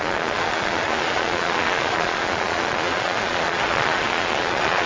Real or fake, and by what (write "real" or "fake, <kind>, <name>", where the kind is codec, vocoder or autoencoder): fake, vocoder, Vocos